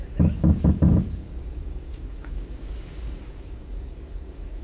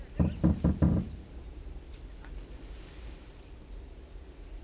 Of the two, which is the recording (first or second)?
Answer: second